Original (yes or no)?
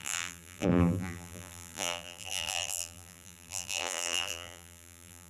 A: no